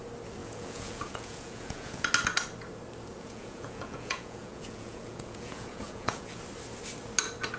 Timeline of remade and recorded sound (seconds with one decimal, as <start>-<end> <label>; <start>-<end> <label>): 0.0-0.4 recorded; 0.4-2.0 remade; 2.0-3.1 recorded; 3.1-6.4 remade; 6.4-7.6 recorded

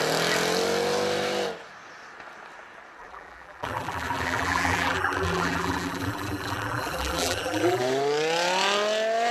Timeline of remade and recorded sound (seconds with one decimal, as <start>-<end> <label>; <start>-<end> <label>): 0.0-3.0 recorded; 3.0-7.8 remade; 7.8-9.3 recorded

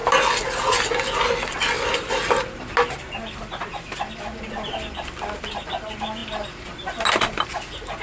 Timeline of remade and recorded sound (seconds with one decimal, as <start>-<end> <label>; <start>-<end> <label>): 0.0-8.0 recorded

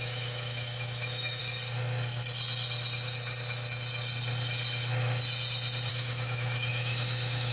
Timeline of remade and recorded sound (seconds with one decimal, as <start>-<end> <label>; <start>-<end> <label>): 0.0-1.4 remade; 1.4-5.9 recorded; 5.9-7.5 remade

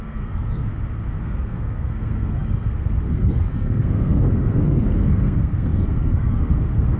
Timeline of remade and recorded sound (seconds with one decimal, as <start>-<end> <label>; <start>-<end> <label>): 0.0-0.7 remade; 0.7-1.2 recorded; 1.2-7.0 remade

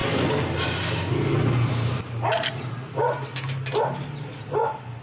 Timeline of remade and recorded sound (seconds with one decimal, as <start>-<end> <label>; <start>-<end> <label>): 0.0-5.0 recorded

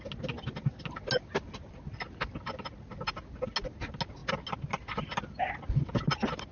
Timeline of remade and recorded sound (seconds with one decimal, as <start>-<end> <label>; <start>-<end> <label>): 0.0-6.5 recorded

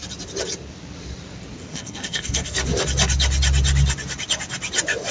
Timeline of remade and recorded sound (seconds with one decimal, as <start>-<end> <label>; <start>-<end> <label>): 0.0-1.7 recorded; 1.7-2.6 remade; 2.6-5.1 recorded